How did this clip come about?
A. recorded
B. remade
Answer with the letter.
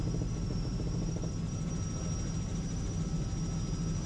A